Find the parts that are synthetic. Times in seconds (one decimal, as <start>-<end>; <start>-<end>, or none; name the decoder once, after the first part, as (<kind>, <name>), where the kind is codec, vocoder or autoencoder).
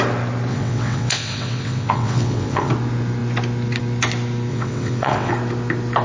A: 0.5-2.7 (vocoder, WaveNeXt); 4.5-5.3